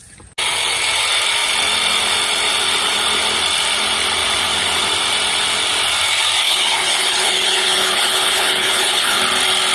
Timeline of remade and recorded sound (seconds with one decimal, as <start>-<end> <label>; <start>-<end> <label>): 0.0-6.4 recorded; 6.4-9.2 remade; 9.2-9.7 recorded